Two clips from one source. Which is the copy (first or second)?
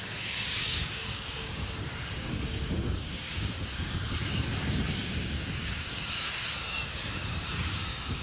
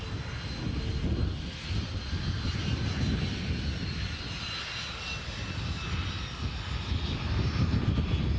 first